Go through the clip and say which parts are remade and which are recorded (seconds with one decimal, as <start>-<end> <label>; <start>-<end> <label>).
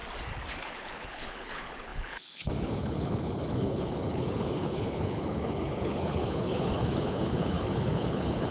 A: 0.0-0.6 recorded; 0.6-8.5 remade